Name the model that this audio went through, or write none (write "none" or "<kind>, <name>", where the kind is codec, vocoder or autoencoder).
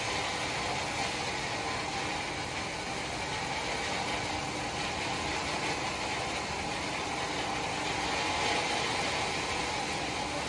none